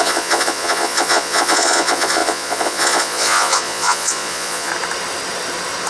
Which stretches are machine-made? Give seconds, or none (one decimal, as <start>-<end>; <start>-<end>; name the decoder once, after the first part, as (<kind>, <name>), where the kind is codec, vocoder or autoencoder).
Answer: 0.0-4.7 (vocoder, Vocos)